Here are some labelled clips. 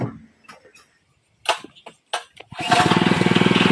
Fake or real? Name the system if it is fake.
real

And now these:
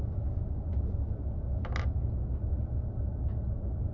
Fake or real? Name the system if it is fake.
real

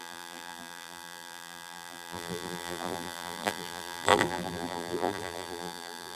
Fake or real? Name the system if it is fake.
fake, vocoder, BigVGAN v2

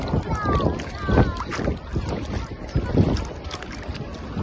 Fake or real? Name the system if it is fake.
real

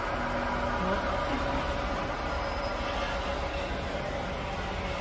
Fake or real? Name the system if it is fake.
real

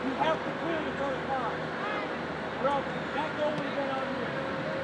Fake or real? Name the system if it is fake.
real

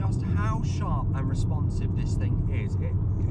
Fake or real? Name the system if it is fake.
real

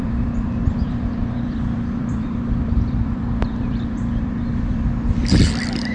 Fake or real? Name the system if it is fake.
fake, vocoder, BigVGAN v2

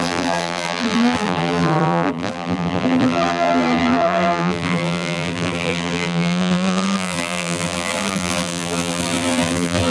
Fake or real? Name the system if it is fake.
fake, vocoder, BigVGAN v2